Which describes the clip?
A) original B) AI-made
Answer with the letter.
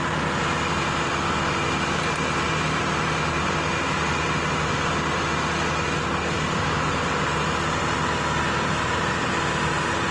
A